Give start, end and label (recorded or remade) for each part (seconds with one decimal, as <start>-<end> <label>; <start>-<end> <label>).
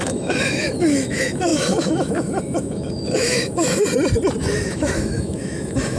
0.0-3.8 remade; 3.8-4.4 recorded; 4.4-6.0 remade